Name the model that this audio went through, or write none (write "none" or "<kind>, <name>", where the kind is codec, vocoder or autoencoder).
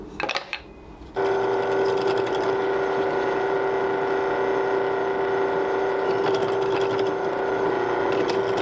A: none